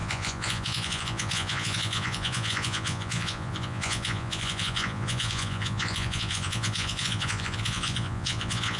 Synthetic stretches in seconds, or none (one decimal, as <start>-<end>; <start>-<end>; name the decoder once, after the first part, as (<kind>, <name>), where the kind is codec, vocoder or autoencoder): 0.0-8.8 (vocoder, Vocos)